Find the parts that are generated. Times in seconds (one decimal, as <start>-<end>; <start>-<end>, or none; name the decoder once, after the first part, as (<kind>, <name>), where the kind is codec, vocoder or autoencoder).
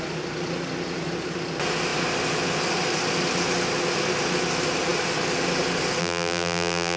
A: 6.0-7.0 (vocoder, BigVGAN v2)